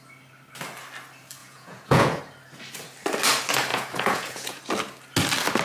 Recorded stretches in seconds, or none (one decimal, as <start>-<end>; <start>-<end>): 0.0-1.4; 2.2-3.7; 4.6-5.6

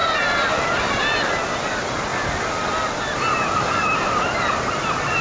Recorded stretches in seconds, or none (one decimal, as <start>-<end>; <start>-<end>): 2.1-3.6

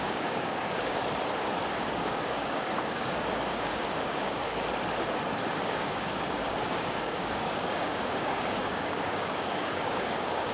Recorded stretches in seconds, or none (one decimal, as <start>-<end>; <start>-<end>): 1.0-1.8; 4.4-5.5

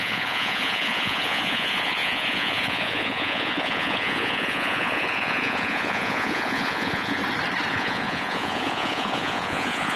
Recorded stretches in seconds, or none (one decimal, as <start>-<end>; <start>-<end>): 7.2-7.7

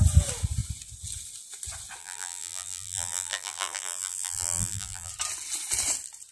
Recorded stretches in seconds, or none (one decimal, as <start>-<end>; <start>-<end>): 0.0-2.0; 5.1-6.3

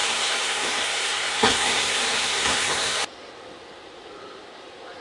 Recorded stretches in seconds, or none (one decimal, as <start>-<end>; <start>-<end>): 3.0-5.0

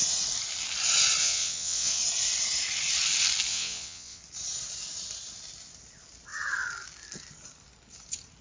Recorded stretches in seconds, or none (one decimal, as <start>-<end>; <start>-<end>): 0.0-1.2; 2.0-3.5; 4.2-8.4